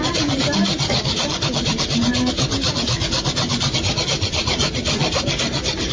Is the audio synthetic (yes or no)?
no